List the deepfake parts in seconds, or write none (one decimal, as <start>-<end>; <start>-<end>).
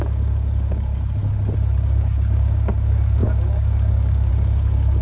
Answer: 0.0-0.9; 1.8-5.0